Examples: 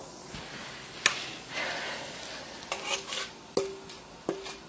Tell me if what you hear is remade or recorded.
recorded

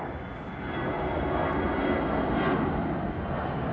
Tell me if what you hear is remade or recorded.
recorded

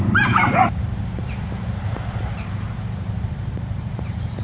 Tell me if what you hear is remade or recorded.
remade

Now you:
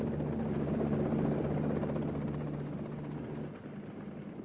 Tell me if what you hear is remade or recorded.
recorded